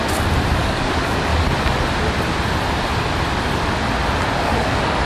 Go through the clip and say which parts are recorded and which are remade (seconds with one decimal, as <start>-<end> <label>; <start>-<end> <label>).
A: 0.0-0.6 recorded; 0.6-1.3 remade; 1.3-4.4 recorded; 4.4-5.1 remade